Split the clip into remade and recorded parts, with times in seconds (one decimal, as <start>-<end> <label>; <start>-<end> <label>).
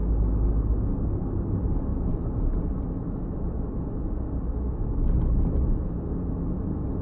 0.0-7.0 recorded